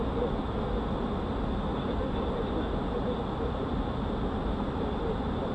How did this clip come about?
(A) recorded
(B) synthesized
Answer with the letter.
A